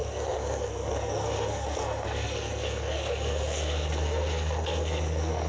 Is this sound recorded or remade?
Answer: remade